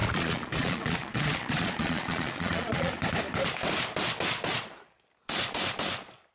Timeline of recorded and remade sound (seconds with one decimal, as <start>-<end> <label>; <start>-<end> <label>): 0.0-2.9 remade; 2.9-6.3 recorded